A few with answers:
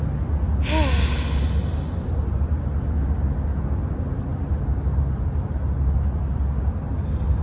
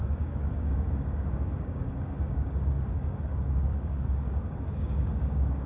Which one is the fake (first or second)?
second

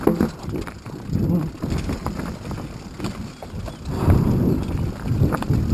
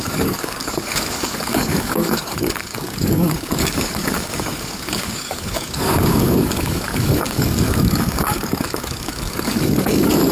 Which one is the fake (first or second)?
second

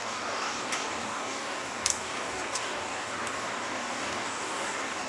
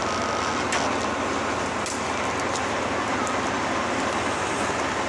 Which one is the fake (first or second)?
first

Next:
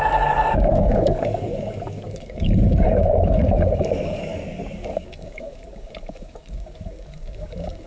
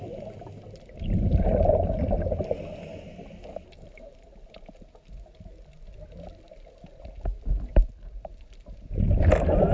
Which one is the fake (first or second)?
first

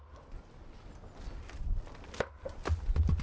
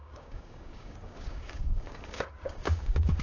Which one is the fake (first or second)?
second